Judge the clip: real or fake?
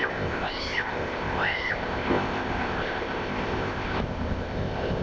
fake